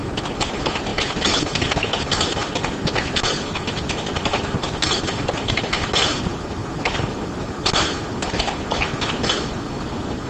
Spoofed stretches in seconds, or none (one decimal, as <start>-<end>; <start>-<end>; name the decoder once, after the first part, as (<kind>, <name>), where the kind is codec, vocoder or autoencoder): none